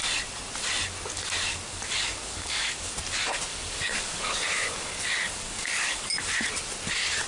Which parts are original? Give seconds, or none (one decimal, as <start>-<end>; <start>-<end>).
0.0-1.5; 2.9-3.5; 6.0-7.3